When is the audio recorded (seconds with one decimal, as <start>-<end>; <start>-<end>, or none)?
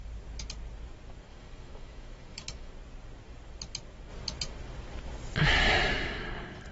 0.0-1.3; 2.7-6.7